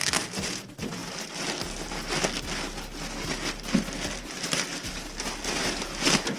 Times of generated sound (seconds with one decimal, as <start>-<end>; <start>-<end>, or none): none